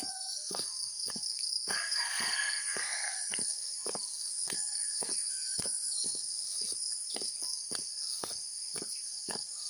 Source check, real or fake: fake